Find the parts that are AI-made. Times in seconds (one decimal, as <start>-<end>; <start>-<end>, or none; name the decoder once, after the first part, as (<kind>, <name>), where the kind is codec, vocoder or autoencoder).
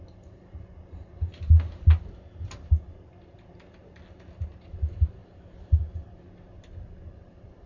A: none